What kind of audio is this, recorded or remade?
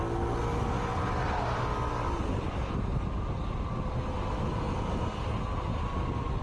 recorded